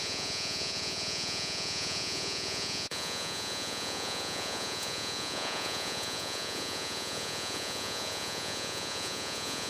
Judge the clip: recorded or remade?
remade